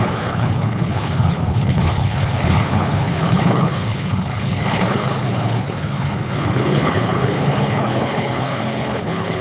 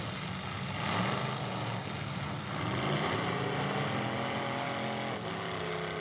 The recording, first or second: second